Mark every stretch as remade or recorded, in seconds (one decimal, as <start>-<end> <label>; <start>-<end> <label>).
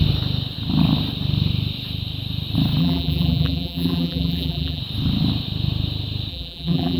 0.0-2.8 recorded; 2.8-4.8 remade; 4.8-6.3 recorded; 6.3-7.0 remade